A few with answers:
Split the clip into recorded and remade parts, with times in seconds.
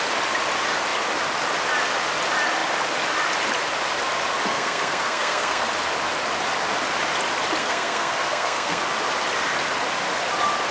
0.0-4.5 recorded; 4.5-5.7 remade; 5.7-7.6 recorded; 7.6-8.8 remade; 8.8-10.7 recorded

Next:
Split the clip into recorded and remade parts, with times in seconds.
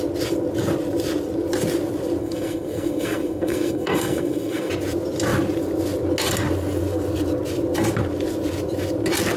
0.0-2.2 recorded; 2.2-4.7 remade; 4.7-9.4 recorded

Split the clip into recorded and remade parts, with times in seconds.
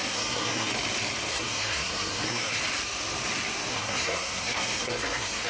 0.0-0.7 remade; 0.7-1.3 recorded; 1.3-2.6 remade; 2.6-3.7 recorded; 3.7-5.5 remade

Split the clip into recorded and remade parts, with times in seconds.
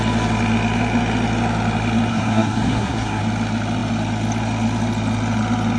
0.0-2.1 recorded; 2.1-3.2 remade; 3.2-5.8 recorded